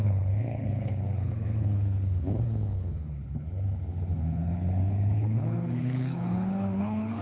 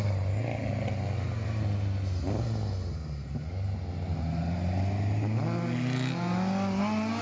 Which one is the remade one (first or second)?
first